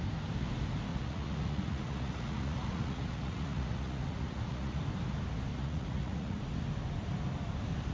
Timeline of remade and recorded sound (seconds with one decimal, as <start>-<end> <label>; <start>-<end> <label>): 0.0-0.9 recorded; 0.9-4.8 remade; 4.8-5.5 recorded; 5.5-6.4 remade; 6.4-7.9 recorded